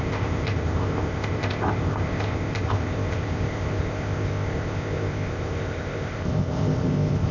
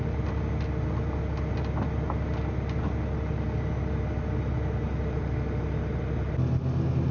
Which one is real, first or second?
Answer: second